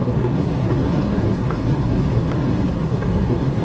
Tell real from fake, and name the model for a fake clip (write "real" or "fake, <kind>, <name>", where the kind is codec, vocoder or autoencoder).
fake, codec, SNAC